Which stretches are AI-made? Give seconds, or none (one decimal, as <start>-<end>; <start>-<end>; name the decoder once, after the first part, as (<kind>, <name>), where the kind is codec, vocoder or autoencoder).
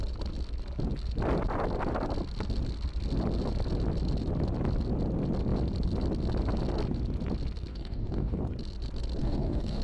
7.7-8.4 (codec, DAC); 9.2-9.8